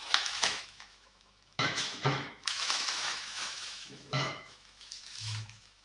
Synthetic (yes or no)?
yes